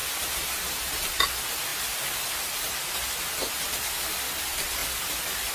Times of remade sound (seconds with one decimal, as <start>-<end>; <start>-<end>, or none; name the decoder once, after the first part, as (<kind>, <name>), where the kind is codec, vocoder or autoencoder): none